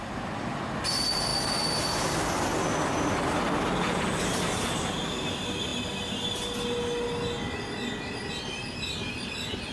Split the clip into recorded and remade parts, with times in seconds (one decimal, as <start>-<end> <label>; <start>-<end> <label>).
0.0-9.7 recorded

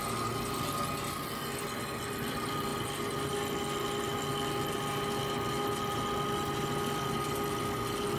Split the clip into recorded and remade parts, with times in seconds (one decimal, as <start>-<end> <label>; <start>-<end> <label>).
0.0-8.2 recorded

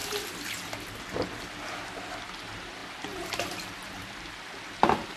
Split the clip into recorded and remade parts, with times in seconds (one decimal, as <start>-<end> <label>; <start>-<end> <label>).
0.0-2.0 remade; 2.0-2.8 recorded; 2.8-5.2 remade

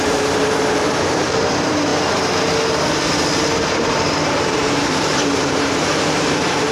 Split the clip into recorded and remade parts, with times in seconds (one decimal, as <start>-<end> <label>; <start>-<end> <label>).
0.0-1.9 remade; 1.9-3.5 recorded; 3.5-4.6 remade; 4.6-5.1 recorded; 5.1-6.7 remade

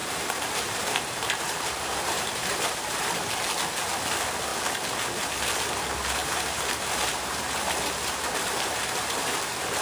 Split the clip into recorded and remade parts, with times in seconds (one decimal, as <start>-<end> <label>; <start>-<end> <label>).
0.0-3.3 remade; 3.3-6.2 recorded; 6.2-9.3 remade; 9.3-9.8 recorded

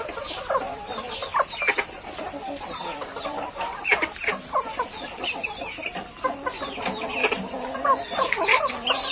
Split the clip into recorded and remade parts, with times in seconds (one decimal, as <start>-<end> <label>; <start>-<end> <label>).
0.0-9.1 recorded

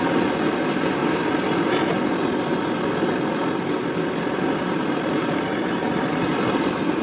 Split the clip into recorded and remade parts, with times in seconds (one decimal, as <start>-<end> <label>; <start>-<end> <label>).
0.0-1.0 remade; 1.0-5.2 recorded; 5.2-7.0 remade

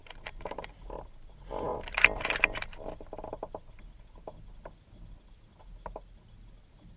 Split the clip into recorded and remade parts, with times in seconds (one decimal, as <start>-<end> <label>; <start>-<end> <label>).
0.0-0.7 remade; 0.7-7.0 recorded